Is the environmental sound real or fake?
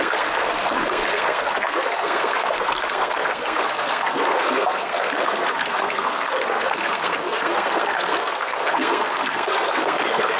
fake